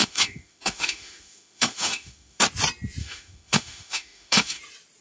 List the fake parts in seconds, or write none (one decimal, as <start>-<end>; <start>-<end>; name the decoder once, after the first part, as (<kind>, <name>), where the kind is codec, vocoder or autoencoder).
0.0-2.4 (autoencoder, DAC-VAE); 3.0-4.6

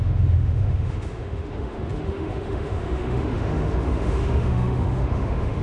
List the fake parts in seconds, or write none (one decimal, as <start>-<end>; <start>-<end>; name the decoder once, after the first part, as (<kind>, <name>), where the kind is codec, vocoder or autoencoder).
0.0-5.6 (autoencoder, DAC-VAE)

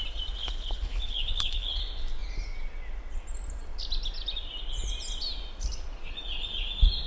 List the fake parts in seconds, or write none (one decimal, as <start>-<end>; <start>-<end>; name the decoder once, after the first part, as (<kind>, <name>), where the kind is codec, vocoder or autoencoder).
0.4-1.8 (codec, HILCodec)

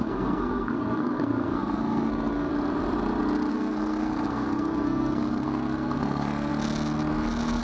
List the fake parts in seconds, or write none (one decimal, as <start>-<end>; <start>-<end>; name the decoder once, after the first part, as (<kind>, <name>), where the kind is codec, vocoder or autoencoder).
0.0-2.5 (codec, SNAC); 3.5-6.5